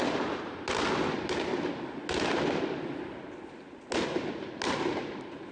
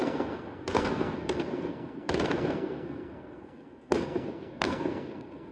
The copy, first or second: second